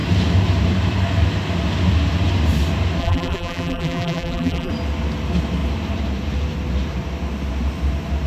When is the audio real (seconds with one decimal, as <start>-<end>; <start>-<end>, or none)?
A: 0.0-3.0; 4.7-8.3